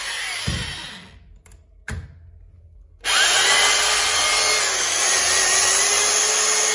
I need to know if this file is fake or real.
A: real